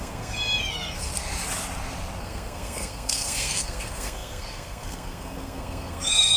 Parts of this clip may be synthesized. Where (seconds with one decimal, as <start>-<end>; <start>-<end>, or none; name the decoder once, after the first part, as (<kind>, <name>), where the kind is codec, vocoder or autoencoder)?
0.0-1.1 (codec, SNAC); 2.2-6.4